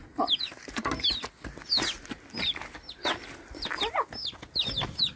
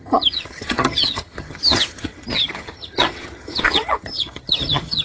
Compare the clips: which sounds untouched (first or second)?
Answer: first